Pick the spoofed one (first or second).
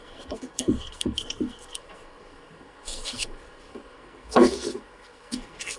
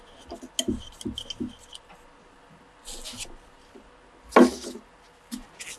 first